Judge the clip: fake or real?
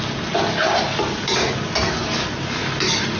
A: real